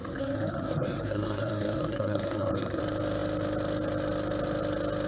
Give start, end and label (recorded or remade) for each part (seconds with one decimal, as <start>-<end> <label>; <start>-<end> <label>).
0.0-2.8 remade; 2.8-5.1 recorded